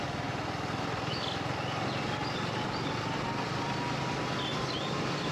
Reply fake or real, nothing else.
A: fake